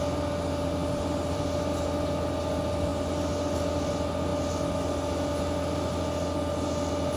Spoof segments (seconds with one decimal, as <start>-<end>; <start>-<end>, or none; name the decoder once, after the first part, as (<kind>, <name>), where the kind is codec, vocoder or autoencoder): 2.9-3.9 (vocoder, BigVGAN v2)